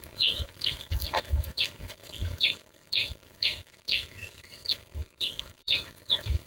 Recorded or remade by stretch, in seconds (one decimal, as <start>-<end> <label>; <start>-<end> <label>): 0.0-6.5 remade